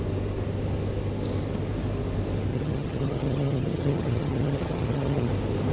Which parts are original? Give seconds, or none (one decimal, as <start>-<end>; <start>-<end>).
0.0-2.5; 5.3-5.7